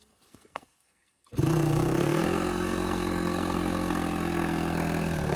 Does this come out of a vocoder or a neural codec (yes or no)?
yes